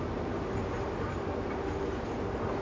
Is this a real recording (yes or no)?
yes